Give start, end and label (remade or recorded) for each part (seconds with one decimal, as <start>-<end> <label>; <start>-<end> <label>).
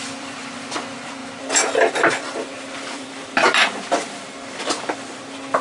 0.0-5.6 remade